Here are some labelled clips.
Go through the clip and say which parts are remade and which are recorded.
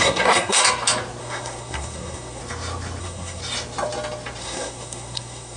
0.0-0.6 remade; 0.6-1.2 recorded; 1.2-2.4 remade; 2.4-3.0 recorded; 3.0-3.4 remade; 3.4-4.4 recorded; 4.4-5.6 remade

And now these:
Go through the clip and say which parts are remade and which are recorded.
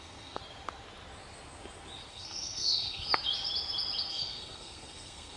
0.0-0.4 remade; 0.4-2.1 recorded; 2.1-3.1 remade; 3.1-4.1 recorded; 4.1-5.4 remade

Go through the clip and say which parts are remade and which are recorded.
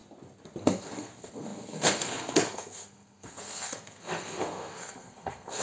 0.0-0.6 recorded; 0.6-5.6 remade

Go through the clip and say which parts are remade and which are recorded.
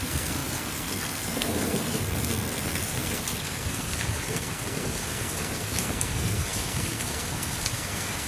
0.0-8.3 remade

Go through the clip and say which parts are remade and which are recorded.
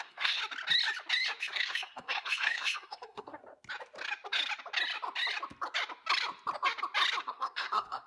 0.0-0.4 remade; 0.4-1.4 recorded; 1.4-3.4 remade; 3.4-7.2 recorded; 7.2-8.1 remade